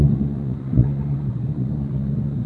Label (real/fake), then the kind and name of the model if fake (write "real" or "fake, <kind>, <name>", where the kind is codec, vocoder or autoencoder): fake, vocoder, Vocos